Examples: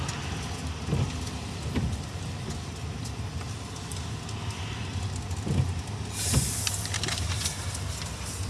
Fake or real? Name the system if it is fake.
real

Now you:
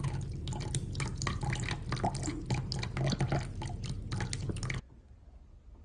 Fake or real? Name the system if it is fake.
real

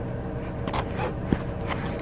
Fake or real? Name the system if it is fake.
real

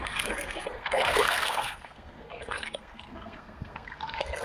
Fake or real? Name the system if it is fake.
fake, codec, SNAC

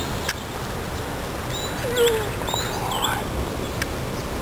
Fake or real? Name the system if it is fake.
real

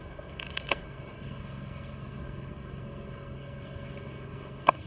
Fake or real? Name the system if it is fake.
fake, codec, SNAC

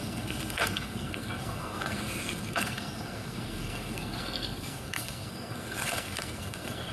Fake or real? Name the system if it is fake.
fake, codec, SNAC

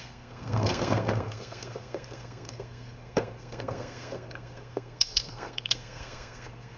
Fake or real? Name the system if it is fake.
fake, codec, SNAC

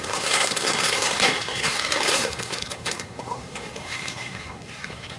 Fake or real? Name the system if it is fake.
fake, codec, SNAC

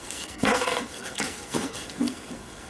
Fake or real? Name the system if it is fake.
fake, codec, SNAC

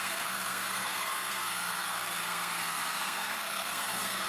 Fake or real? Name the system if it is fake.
fake, codec, SNAC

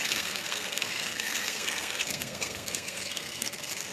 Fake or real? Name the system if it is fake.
fake, codec, SNAC